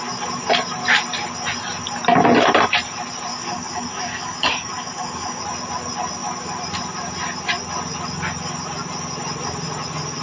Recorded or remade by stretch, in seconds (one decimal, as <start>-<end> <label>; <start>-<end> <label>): 0.0-3.3 recorded; 3.3-5.4 remade; 5.4-10.2 recorded